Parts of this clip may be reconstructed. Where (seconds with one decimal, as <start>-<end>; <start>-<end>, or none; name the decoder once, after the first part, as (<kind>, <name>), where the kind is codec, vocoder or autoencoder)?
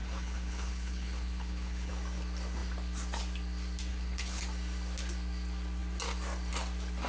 0.0-1.9 (codec, HILCodec); 3.9-4.4